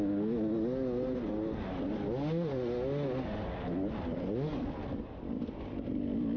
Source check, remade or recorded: recorded